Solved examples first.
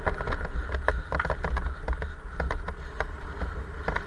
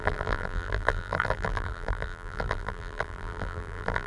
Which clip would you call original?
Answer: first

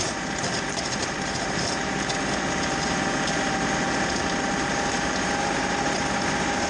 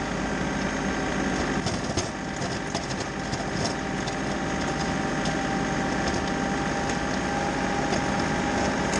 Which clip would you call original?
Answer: second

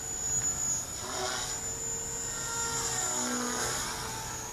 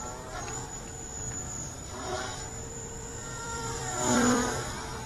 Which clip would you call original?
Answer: first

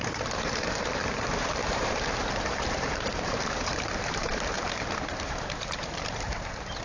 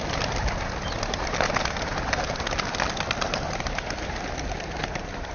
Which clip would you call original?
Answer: second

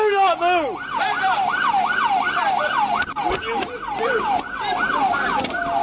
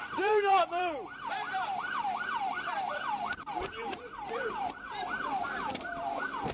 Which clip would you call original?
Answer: first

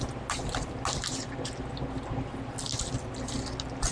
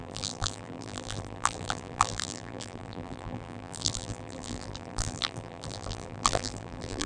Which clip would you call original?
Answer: first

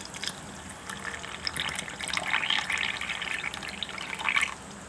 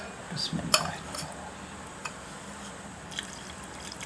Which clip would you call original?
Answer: first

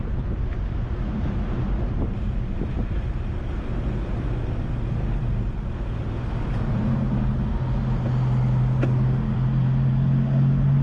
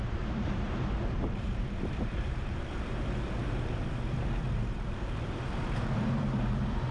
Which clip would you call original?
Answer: first